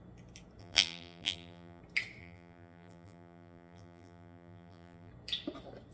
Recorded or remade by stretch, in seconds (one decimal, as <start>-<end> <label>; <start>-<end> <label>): 0.0-0.6 recorded; 0.6-1.8 remade; 1.8-2.2 recorded; 2.2-5.1 remade; 5.1-5.9 recorded